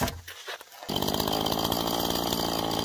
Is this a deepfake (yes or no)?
no